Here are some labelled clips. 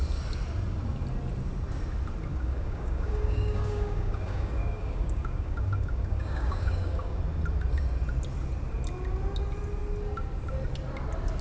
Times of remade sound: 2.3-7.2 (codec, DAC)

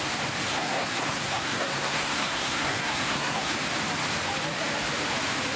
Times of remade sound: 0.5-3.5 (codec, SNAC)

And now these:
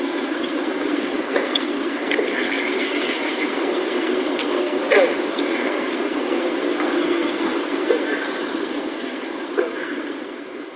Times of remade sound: 0.0-4.8 (codec, SNAC); 5.3-10.8